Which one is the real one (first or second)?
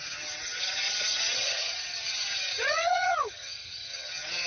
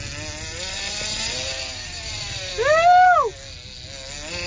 second